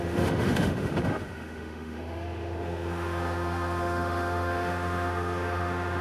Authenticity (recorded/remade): remade